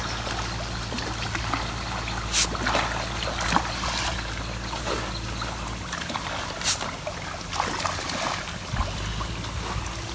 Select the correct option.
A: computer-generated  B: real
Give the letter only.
B